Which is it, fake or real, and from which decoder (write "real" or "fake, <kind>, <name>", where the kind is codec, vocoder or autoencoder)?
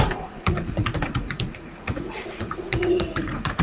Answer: fake, vocoder, Vocos